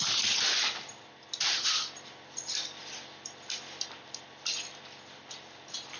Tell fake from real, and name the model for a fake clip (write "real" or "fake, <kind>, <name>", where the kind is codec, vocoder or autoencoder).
real